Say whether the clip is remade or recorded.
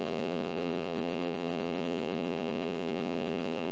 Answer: remade